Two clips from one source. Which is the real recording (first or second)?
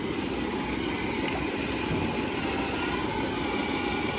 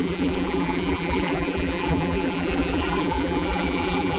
first